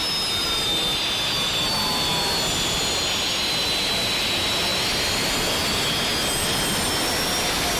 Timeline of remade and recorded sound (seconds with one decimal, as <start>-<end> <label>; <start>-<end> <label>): 0.0-7.8 recorded